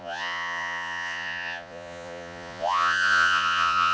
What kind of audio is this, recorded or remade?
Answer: remade